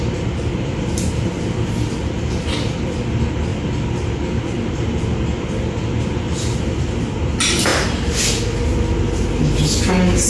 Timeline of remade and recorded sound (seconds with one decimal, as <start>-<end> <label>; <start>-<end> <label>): 0.0-10.3 recorded